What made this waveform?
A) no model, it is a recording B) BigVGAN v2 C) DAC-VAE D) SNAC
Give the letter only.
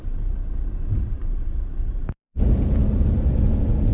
B